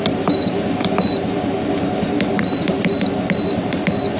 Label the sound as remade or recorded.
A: remade